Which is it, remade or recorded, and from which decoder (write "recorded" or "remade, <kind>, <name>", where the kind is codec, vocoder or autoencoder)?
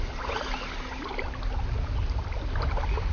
recorded